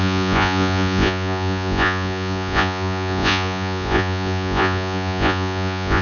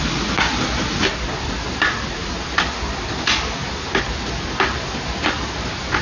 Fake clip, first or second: first